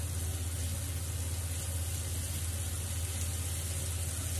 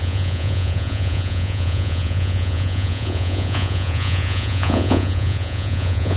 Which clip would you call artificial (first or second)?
second